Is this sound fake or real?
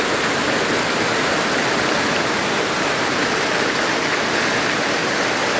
real